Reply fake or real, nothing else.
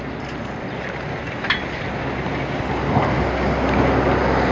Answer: real